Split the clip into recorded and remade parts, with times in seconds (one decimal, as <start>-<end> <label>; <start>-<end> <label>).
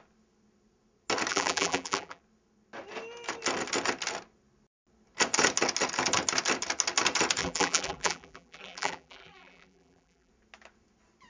0.0-1.3 recorded; 1.3-2.2 remade; 2.2-7.4 recorded; 7.4-10.3 remade; 10.3-11.3 recorded